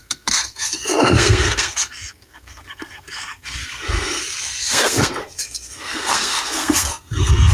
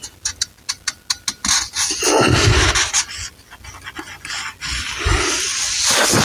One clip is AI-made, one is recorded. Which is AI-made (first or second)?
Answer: first